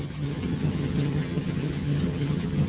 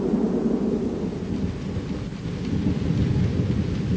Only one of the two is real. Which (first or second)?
second